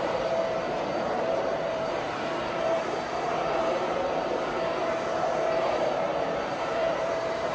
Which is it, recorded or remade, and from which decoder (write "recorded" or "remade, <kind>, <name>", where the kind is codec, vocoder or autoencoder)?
remade, vocoder, BigVGAN v2